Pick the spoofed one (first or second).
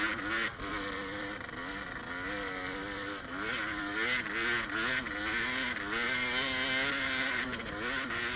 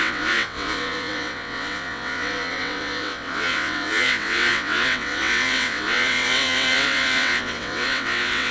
second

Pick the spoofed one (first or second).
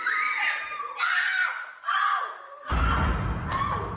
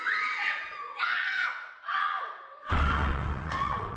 second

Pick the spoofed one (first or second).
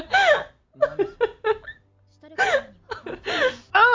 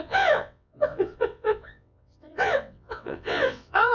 second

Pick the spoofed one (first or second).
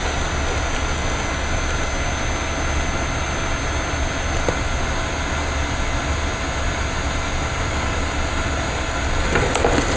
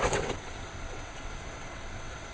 second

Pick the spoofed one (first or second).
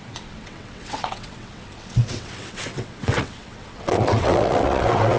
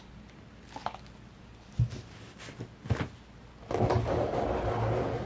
first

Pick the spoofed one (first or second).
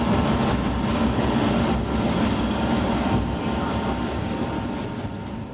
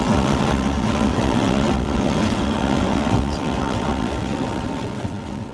second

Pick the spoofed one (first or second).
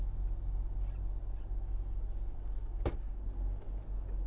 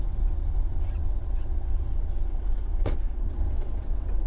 second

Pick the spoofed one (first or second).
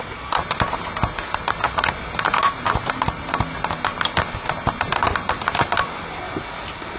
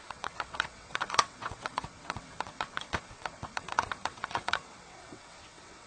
second